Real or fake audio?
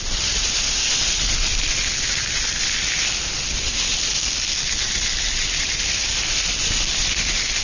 real